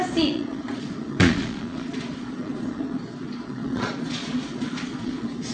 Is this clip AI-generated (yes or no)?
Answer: yes